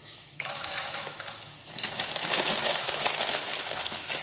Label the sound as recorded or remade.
remade